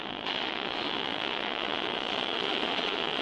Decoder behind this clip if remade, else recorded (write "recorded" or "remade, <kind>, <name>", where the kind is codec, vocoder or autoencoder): remade, vocoder, Vocos